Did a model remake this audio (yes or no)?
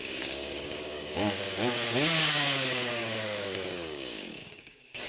yes